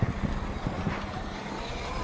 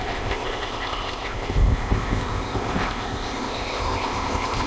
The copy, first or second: second